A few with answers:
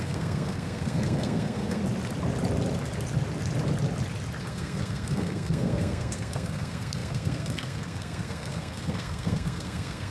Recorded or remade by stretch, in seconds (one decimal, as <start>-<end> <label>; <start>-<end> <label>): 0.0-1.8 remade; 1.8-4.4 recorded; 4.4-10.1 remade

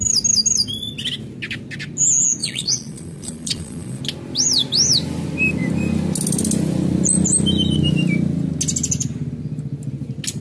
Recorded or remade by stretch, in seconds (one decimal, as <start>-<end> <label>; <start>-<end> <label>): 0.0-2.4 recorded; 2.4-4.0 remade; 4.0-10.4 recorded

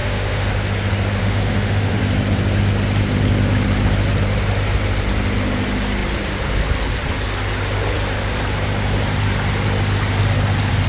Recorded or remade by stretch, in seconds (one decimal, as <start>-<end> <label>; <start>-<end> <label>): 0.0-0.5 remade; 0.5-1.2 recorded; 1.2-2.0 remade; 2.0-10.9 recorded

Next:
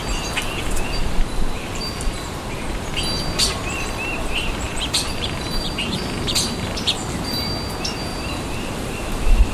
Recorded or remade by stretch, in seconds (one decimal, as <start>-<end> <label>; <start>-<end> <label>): 0.0-1.0 recorded; 1.0-3.0 remade; 3.0-3.6 recorded; 3.6-7.5 remade; 7.5-8.1 recorded; 8.1-9.5 remade